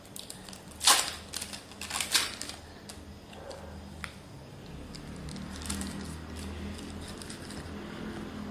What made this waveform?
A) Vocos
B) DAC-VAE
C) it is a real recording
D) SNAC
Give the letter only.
C